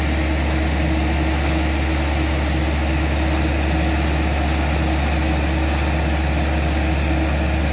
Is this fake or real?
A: real